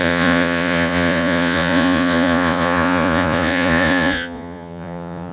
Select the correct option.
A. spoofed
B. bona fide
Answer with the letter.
A